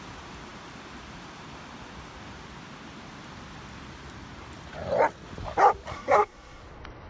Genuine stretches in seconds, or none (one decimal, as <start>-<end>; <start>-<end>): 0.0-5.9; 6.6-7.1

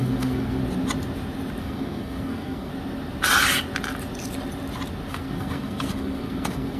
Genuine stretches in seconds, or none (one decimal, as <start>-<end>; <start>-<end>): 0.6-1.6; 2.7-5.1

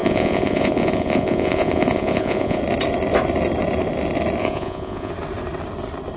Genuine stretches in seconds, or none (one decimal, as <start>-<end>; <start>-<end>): 2.6-4.4; 5.1-6.2

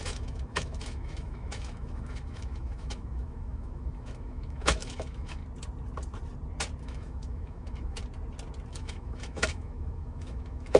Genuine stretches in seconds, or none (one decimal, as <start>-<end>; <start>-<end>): 5.4-6.8; 8.0-8.7